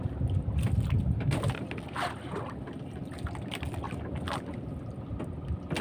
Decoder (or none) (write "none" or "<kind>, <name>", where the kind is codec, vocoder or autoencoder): none